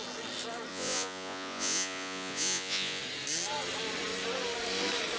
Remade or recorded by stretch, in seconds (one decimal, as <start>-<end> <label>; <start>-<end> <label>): 0.0-0.7 recorded; 0.7-3.0 remade; 3.0-5.2 recorded